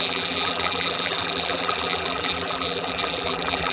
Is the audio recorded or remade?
remade